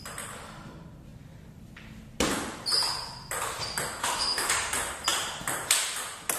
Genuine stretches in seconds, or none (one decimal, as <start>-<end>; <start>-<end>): 0.0-4.0; 4.5-6.4